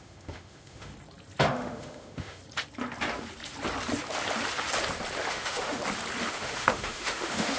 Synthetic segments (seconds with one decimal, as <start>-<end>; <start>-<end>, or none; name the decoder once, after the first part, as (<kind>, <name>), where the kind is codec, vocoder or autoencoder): 0.0-0.9 (autoencoder, DAC-VAE); 1.5-2.4; 5.3-5.8; 6.3-7.6